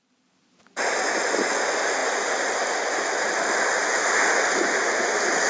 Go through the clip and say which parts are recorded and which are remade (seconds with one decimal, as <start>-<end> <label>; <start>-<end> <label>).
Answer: 0.0-2.0 recorded; 2.0-3.1 remade; 3.1-5.5 recorded

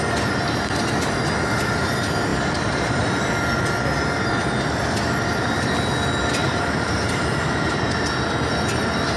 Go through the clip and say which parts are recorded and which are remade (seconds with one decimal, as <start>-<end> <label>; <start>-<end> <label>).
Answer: 0.0-2.3 recorded; 2.3-3.3 remade; 3.3-6.4 recorded; 6.4-8.0 remade; 8.0-9.2 recorded

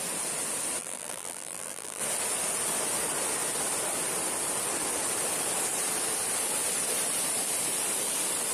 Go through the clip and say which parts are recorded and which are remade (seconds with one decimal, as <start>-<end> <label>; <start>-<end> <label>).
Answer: 0.0-0.8 recorded; 0.8-2.0 remade; 2.0-8.5 recorded

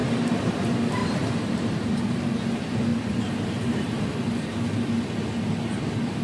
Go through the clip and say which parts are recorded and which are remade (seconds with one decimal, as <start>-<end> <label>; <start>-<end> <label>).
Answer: 0.0-1.0 recorded; 1.0-1.9 remade; 1.9-6.2 recorded

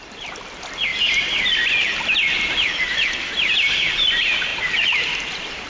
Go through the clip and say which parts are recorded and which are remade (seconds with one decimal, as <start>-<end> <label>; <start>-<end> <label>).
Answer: 0.0-0.9 remade; 0.9-1.5 recorded; 1.5-5.7 remade

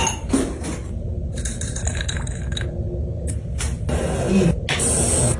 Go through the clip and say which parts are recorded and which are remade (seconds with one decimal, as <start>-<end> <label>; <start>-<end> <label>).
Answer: 0.0-5.4 recorded

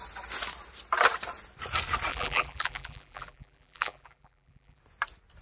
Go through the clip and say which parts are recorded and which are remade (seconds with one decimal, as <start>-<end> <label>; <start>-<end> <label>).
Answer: 0.0-2.1 recorded; 2.1-4.8 remade; 4.8-5.4 recorded

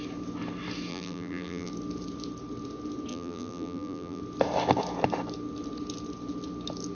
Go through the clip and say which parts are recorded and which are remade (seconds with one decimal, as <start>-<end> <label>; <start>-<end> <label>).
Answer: 0.0-0.9 recorded; 0.9-1.7 remade; 1.7-3.1 recorded; 3.1-4.2 remade; 4.2-6.9 recorded